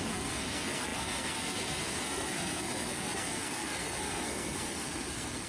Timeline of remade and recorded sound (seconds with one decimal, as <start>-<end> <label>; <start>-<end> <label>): 0.0-5.5 remade